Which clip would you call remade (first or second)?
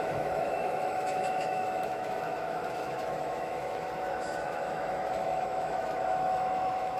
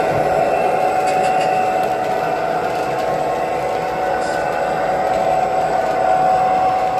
first